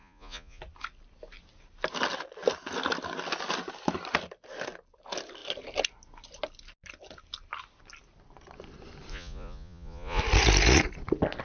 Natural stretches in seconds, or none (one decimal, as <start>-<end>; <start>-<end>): 0.6-9.1; 10.2-11.4